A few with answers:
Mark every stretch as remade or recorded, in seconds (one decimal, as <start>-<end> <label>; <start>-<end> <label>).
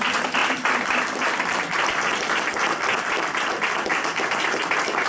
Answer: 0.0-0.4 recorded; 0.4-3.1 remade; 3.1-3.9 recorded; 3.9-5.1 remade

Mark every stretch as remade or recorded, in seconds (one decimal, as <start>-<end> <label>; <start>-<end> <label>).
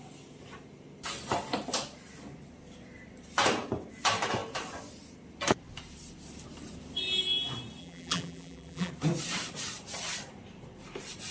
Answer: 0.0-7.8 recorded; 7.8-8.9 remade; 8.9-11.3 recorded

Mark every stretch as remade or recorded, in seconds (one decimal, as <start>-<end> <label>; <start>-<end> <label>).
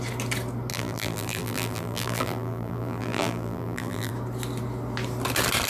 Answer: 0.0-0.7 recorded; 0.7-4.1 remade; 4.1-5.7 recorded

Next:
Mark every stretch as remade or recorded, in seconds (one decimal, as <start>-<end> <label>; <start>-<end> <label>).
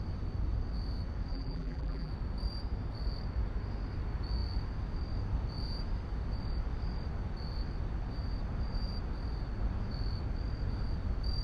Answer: 0.0-1.3 recorded; 1.3-2.1 remade; 2.1-11.4 recorded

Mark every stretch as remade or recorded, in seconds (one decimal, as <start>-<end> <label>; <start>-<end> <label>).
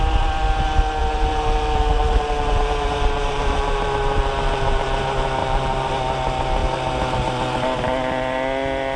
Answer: 0.0-1.0 recorded; 1.0-5.0 remade; 5.0-5.4 recorded; 5.4-5.9 remade; 5.9-9.0 recorded